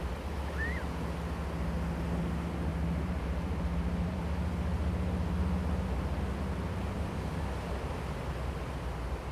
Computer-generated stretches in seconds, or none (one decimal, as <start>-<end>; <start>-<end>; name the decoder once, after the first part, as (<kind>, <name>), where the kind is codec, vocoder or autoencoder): 2.7-4.2 (vocoder, BigVGAN v2)